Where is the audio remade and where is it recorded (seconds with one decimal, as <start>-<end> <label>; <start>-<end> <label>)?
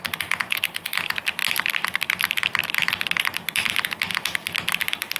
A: 0.0-1.4 recorded; 1.4-2.4 remade; 2.4-4.1 recorded; 4.1-4.7 remade; 4.7-5.2 recorded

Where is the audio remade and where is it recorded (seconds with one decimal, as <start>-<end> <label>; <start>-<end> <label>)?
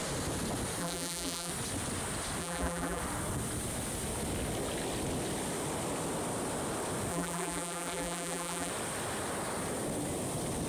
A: 0.0-0.8 recorded; 0.8-1.5 remade; 1.5-2.4 recorded; 2.4-3.0 remade; 3.0-7.1 recorded; 7.1-8.7 remade; 8.7-10.7 recorded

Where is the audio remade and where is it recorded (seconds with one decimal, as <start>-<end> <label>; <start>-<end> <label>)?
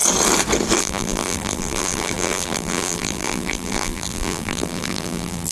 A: 0.0-0.8 recorded; 0.8-5.5 remade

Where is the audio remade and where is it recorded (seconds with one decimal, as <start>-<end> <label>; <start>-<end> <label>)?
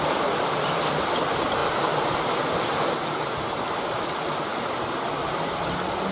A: 0.0-6.1 recorded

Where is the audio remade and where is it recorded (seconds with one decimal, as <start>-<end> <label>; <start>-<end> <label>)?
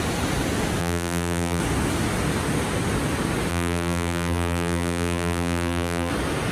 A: 0.0-0.8 recorded; 0.8-1.6 remade; 1.6-3.5 recorded; 3.5-6.1 remade; 6.1-6.5 recorded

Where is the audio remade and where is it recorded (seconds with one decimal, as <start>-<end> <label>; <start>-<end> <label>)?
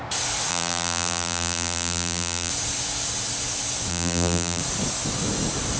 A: 0.0-0.5 recorded; 0.5-2.5 remade; 2.5-3.9 recorded; 3.9-4.6 remade; 4.6-5.8 recorded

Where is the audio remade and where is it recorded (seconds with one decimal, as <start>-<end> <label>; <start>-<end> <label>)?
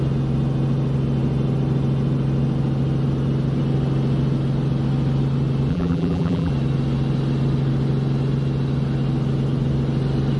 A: 0.0-5.7 recorded; 5.7-6.5 remade; 6.5-10.4 recorded